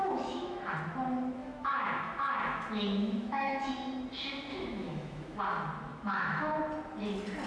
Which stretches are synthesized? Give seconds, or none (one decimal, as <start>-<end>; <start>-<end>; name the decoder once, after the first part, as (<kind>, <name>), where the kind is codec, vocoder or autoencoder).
0.0-0.6 (autoencoder, DAC-VAE); 1.4-3.7; 4.5-5.4; 5.9-6.6